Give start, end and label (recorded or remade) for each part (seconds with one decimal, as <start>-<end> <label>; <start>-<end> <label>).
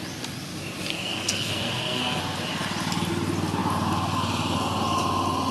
0.0-0.9 recorded; 0.9-2.2 remade; 2.2-5.5 recorded